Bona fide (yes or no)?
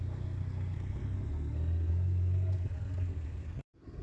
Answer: no